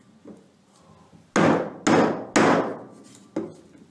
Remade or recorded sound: recorded